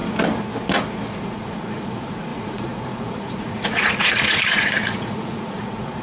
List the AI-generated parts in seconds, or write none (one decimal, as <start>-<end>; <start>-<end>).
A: 1.1-6.0